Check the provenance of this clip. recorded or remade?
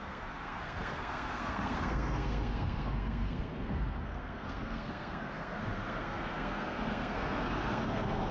remade